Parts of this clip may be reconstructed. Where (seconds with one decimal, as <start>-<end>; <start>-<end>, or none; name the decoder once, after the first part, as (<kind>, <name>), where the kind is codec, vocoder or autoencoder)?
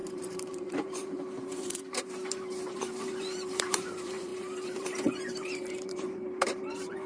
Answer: 0.0-7.1 (vocoder, BigVGAN v2)